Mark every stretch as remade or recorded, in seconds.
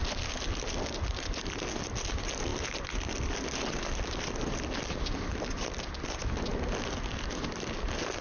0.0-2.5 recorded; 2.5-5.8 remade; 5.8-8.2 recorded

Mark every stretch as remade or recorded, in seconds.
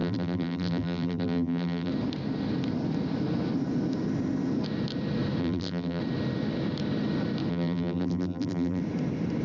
0.0-1.9 remade; 1.9-5.4 recorded; 5.4-6.0 remade; 6.0-7.5 recorded; 7.5-8.8 remade; 8.8-9.4 recorded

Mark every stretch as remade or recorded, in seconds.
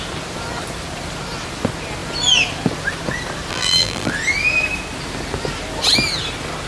0.0-3.5 recorded; 3.5-4.1 remade; 4.1-6.7 recorded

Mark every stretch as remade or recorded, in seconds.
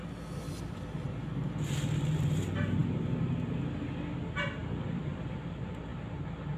0.0-4.6 recorded; 4.6-5.4 remade; 5.4-6.6 recorded